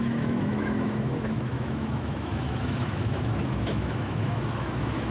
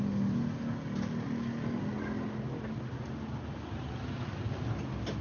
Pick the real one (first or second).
second